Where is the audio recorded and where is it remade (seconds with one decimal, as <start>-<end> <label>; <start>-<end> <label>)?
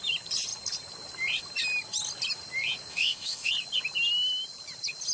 0.0-2.9 recorded; 2.9-3.5 remade; 3.5-5.1 recorded